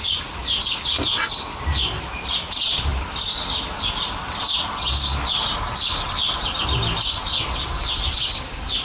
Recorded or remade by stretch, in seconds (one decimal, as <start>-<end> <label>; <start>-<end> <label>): 0.0-8.8 recorded